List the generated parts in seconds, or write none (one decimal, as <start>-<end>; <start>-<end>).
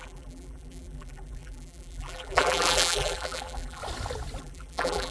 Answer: 0.0-3.8; 4.4-5.1